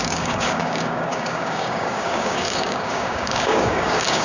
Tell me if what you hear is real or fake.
fake